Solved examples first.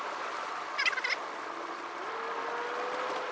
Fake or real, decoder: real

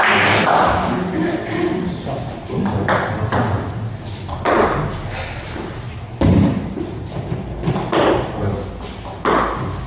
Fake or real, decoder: real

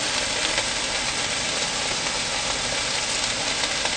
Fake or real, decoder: real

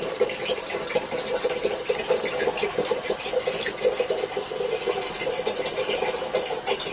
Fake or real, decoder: real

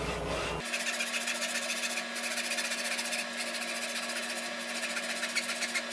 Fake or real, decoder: real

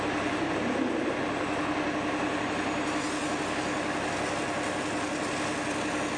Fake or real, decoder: real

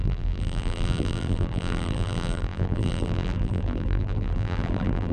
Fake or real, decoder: fake, vocoder, BigVGAN v2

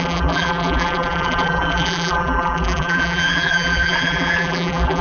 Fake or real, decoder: fake, vocoder, BigVGAN v2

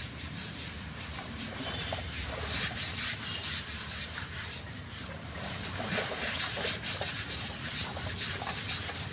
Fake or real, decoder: fake, vocoder, BigVGAN v2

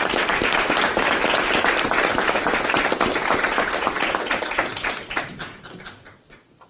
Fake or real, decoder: real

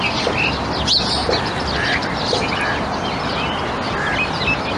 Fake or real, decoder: real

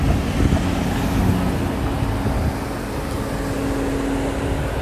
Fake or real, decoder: real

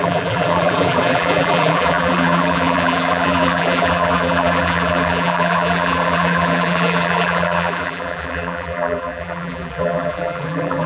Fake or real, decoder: fake, vocoder, BigVGAN v2